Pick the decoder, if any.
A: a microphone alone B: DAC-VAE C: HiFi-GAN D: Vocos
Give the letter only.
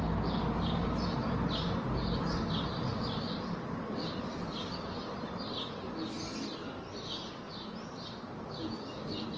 A